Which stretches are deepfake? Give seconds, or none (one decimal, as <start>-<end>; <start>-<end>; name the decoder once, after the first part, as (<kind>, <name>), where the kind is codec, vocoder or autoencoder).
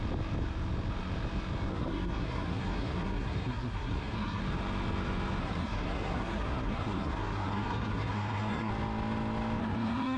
1.7-4.4 (codec, SNAC); 5.4-8.7; 9.6-10.2